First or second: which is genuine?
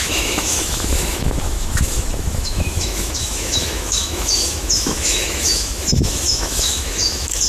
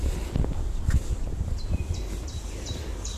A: second